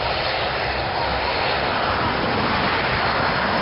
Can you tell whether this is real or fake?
real